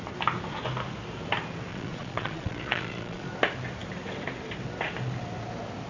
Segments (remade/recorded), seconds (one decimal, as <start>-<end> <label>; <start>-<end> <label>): 0.0-1.7 recorded; 1.7-3.3 remade; 3.3-5.9 recorded